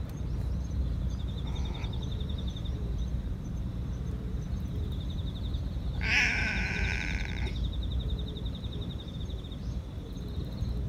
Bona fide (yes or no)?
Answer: no